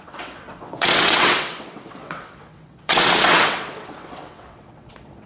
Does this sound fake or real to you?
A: fake